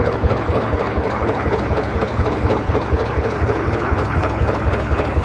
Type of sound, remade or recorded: remade